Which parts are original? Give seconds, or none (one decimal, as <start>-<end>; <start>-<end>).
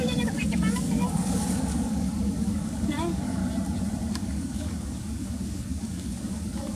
3.4-4.1